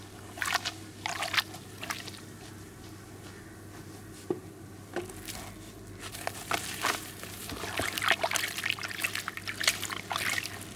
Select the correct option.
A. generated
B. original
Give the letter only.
B